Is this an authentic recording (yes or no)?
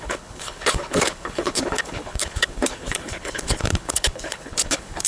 no